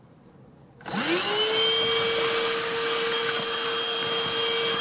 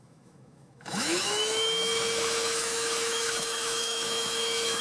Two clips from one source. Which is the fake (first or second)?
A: second